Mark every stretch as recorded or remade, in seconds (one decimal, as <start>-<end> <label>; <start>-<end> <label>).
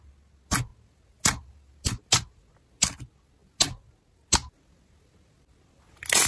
0.0-6.3 recorded